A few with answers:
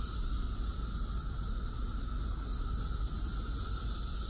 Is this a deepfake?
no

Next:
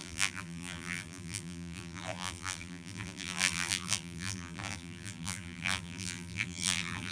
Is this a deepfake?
yes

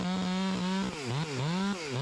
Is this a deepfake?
no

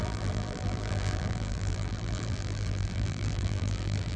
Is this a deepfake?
yes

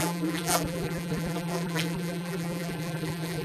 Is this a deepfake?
yes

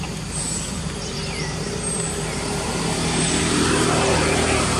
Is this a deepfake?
yes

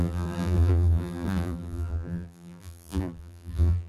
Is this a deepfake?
yes